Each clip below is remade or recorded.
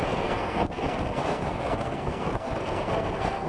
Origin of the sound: remade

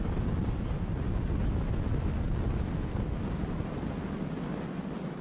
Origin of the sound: recorded